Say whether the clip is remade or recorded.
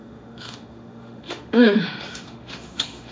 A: remade